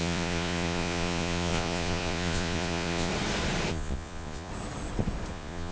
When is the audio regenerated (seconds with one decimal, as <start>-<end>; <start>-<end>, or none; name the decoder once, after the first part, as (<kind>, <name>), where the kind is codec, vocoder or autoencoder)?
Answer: 0.0-3.1 (vocoder, Vocos); 3.7-4.5; 5.3-5.7